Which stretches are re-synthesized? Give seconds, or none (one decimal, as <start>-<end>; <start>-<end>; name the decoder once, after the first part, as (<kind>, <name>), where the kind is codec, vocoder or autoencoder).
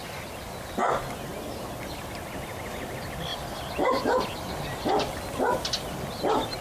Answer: 3.3-6.6 (vocoder, BigVGAN v2)